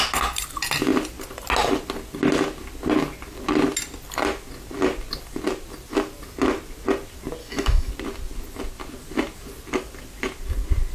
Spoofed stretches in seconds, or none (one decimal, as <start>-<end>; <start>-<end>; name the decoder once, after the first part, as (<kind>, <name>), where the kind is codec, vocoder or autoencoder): 7.4-7.9 (autoencoder, DAC-VAE)